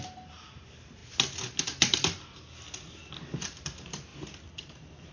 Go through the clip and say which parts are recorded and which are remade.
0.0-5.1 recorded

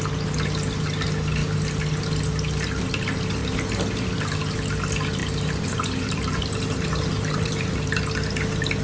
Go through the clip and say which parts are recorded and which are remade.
0.0-5.2 recorded; 5.2-7.7 remade; 7.7-8.8 recorded

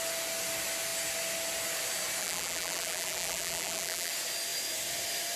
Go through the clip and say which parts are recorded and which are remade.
0.0-2.2 recorded; 2.2-4.1 remade; 4.1-5.4 recorded

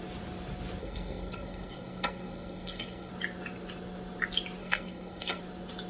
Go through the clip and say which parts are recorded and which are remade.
0.0-0.8 recorded; 0.8-3.1 remade; 3.1-4.6 recorded; 4.6-5.4 remade; 5.4-5.9 recorded

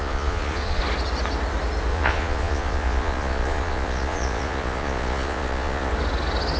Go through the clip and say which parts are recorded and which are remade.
0.0-0.8 remade; 0.8-1.9 recorded; 1.9-5.9 remade; 5.9-6.6 recorded